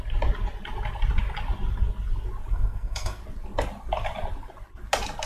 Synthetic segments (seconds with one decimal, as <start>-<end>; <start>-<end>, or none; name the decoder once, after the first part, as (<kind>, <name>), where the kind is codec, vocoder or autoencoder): 2.5-3.2 (codec, SNAC)